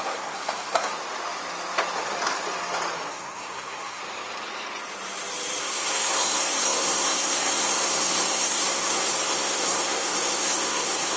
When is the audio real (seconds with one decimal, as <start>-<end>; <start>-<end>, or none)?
0.9-3.1; 4.0-5.6